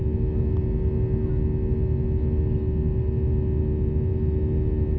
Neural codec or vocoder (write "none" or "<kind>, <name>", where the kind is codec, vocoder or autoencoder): none